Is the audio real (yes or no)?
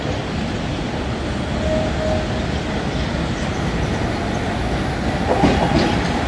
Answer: yes